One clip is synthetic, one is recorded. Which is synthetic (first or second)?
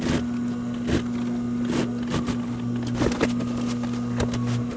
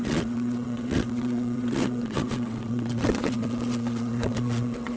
second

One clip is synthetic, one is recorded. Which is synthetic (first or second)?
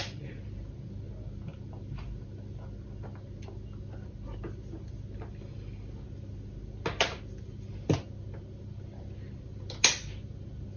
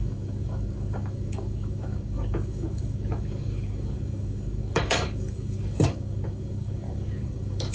second